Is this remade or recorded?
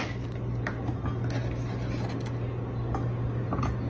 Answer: recorded